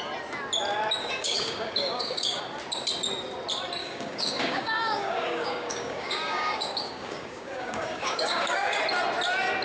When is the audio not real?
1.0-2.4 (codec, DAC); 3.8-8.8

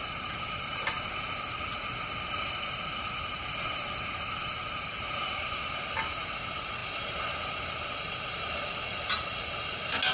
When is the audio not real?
6.8-7.6 (vocoder, BigVGAN v2)